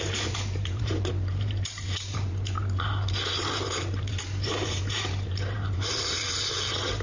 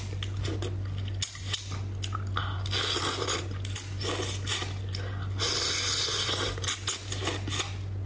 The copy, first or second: first